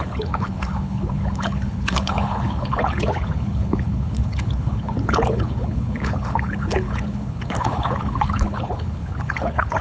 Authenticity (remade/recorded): remade